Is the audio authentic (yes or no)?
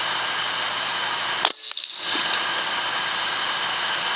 yes